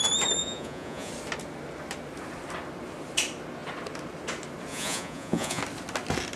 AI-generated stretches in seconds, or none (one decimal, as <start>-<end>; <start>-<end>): 0.4-1.1; 4.7-5.6